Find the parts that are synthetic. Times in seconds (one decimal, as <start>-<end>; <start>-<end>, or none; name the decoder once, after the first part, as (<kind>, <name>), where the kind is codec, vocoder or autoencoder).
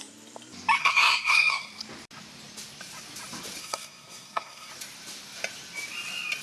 0.8-1.7 (codec, SNAC); 3.6-4.7